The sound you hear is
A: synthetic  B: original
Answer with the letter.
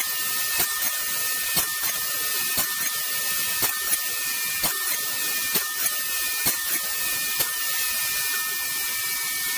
B